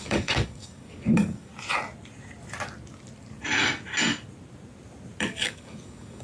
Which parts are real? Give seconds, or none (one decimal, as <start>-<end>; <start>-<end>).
1.5-5.2